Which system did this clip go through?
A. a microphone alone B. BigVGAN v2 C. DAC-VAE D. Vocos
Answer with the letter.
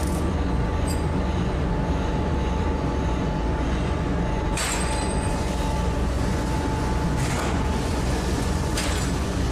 D